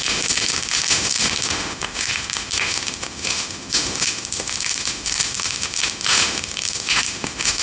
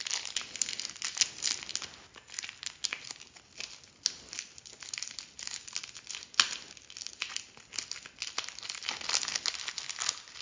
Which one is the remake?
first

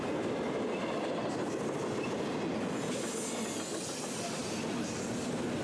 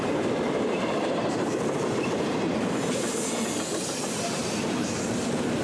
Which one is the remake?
second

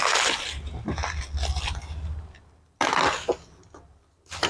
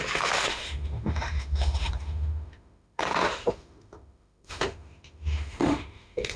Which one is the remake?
second